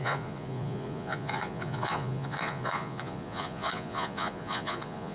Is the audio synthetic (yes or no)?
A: yes